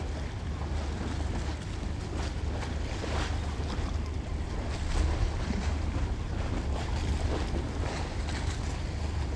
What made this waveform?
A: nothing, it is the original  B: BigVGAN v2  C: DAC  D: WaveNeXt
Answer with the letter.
A